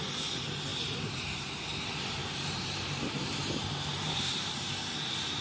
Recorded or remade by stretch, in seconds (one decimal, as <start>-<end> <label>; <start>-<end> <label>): 0.0-0.7 recorded; 0.7-1.5 remade; 1.5-2.2 recorded; 2.2-4.7 remade; 4.7-5.4 recorded